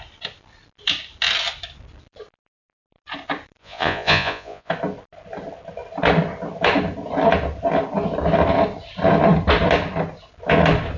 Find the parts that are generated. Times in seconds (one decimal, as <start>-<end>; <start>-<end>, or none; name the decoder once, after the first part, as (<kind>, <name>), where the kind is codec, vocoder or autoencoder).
3.6-4.7 (vocoder, Vocos)